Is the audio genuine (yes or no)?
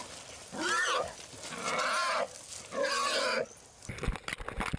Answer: yes